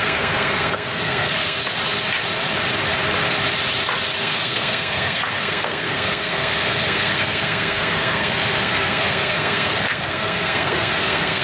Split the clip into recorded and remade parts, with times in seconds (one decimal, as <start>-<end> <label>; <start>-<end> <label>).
0.0-1.6 remade; 1.6-4.2 recorded; 4.2-11.4 remade